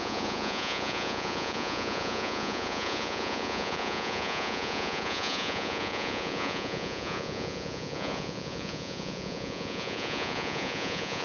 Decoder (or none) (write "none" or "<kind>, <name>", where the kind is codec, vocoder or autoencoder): vocoder, Vocos